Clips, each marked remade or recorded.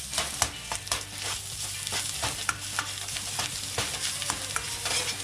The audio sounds recorded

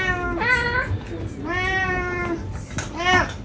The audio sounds recorded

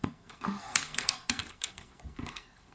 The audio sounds remade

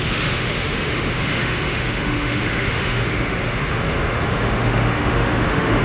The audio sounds remade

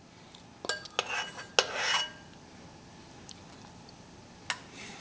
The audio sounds recorded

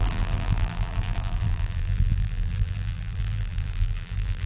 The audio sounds remade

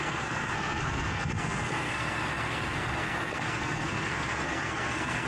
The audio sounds remade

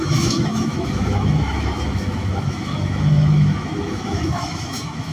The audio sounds remade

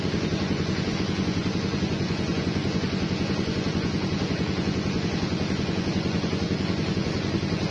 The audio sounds remade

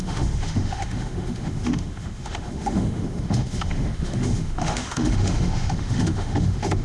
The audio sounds remade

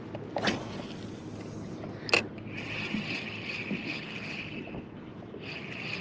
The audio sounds recorded